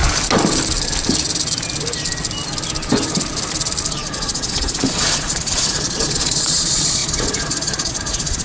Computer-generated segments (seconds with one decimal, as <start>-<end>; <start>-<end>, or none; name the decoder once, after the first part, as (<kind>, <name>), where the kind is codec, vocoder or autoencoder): 3.9-8.4 (vocoder, Vocos)